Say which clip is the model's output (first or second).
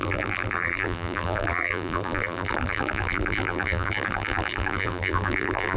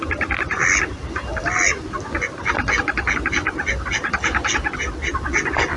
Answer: first